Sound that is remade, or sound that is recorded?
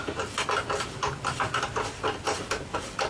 recorded